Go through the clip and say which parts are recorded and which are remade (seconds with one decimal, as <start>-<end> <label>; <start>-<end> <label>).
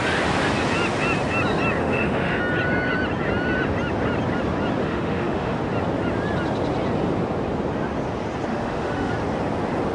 0.0-1.8 recorded; 1.8-2.4 remade; 2.4-4.8 recorded; 4.8-5.6 remade; 5.6-8.5 recorded; 8.5-9.1 remade; 9.1-9.9 recorded